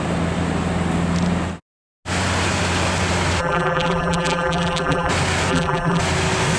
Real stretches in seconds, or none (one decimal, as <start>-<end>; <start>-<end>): 0.0-3.4; 5.1-5.5; 6.0-6.6

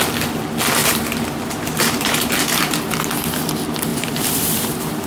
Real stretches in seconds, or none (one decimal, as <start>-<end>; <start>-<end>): 0.0-0.8; 2.9-3.9

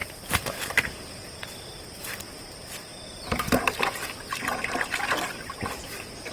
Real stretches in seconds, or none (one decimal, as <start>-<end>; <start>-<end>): 2.9-5.1

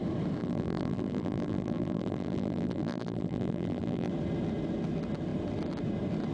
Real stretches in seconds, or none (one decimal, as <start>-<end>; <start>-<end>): 0.0-0.4; 4.1-6.3

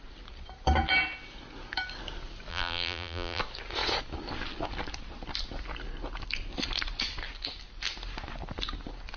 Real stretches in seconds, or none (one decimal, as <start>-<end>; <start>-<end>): 0.0-2.5; 3.4-9.2

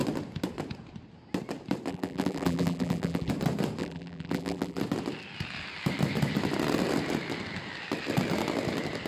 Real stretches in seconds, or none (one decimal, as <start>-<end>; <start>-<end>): 0.0-1.9; 3.3-3.8; 4.8-9.1